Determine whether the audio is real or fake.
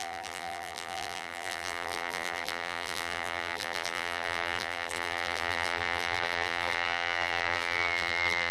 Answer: fake